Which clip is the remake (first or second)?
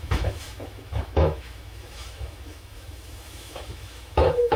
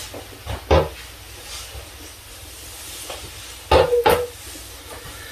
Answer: first